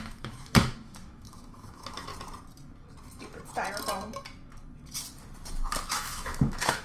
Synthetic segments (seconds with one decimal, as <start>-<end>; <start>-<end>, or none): 0.0-2.1; 5.9-6.8